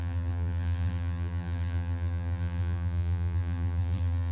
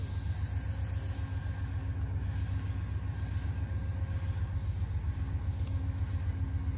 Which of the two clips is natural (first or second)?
second